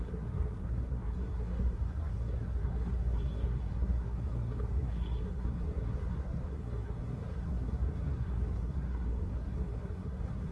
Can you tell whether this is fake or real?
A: fake